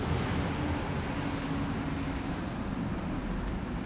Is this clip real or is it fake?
real